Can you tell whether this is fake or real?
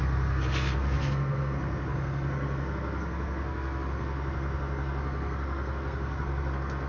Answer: fake